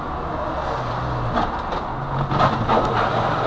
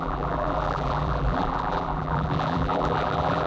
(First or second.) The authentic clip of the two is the first